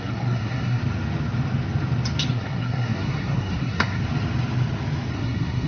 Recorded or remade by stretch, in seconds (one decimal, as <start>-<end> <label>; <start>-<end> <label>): 0.0-0.8 remade; 0.8-2.3 recorded; 2.3-4.0 remade; 4.0-5.1 recorded; 5.1-5.7 remade

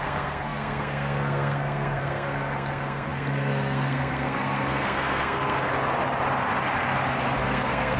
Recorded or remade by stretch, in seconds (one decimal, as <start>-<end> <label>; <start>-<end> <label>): 0.0-5.7 remade; 5.7-7.4 recorded; 7.4-8.0 remade

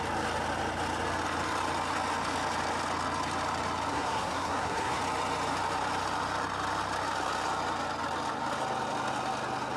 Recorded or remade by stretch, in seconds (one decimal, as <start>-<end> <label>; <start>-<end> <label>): 0.0-3.9 recorded; 3.9-5.0 remade; 5.0-9.8 recorded

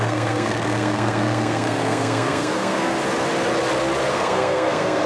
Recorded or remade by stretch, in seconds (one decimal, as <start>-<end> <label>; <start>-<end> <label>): 0.0-2.9 remade; 2.9-4.1 recorded; 4.1-5.1 remade

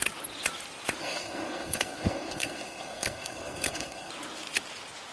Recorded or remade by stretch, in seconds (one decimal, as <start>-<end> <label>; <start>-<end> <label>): 0.0-1.0 recorded; 1.0-4.1 remade; 4.1-5.1 recorded